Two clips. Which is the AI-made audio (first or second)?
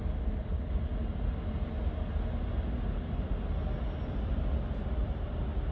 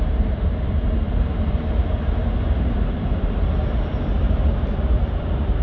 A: second